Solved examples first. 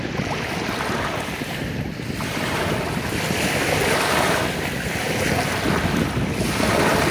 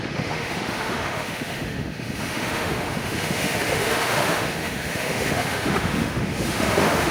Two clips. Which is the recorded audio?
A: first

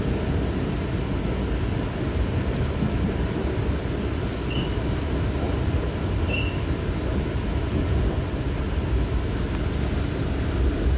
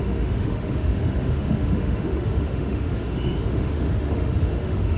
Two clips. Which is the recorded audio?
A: first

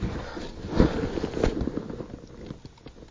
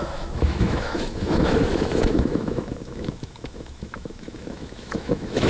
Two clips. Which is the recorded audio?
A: first